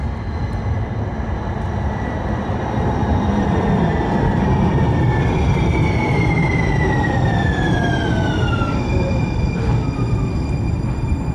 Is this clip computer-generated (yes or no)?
yes